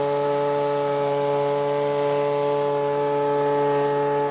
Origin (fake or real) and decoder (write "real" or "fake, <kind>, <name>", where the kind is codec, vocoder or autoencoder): real